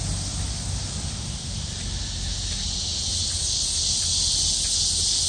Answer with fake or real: real